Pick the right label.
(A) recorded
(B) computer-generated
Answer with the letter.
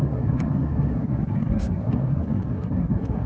B